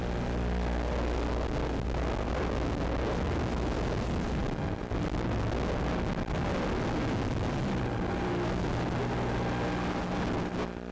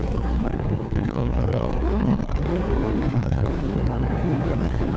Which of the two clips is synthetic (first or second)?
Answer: second